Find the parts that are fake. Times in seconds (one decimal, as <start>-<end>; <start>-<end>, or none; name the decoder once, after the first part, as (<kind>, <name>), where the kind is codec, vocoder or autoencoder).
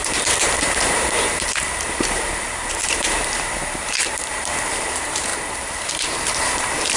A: 0.0-5.3 (vocoder, BigVGAN v2); 5.9-7.0